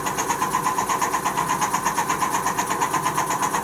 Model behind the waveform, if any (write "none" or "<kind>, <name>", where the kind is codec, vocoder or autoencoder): none